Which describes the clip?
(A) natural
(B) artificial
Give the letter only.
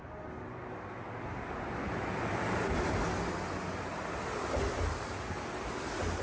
A